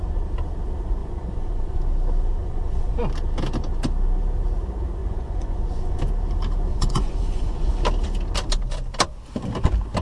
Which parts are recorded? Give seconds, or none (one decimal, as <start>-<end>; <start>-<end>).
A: 0.0-1.0; 1.8-2.4; 3.0-5.0; 6.0-6.7; 7.7-10.0

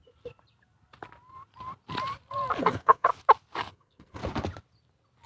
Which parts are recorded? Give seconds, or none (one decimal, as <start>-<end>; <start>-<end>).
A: 0.0-2.6; 3.1-3.7; 4.2-5.3

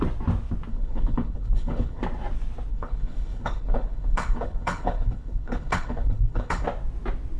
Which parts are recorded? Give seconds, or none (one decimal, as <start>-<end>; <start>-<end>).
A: 0.0-0.7; 2.0-2.7; 6.6-7.4